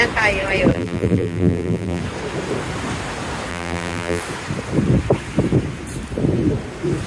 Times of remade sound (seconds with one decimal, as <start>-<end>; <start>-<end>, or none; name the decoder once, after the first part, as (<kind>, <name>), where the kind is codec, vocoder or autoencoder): 0.7-2.0 (vocoder, BigVGAN v2); 3.5-4.2